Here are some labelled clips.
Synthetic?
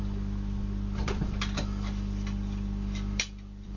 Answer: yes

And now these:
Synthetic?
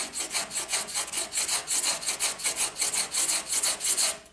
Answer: yes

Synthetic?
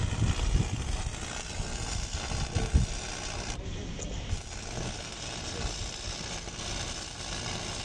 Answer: no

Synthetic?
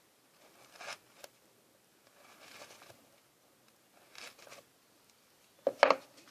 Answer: no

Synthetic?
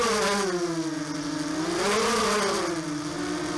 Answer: no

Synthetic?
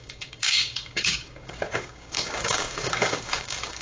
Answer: yes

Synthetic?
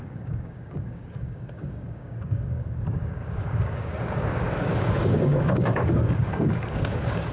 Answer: yes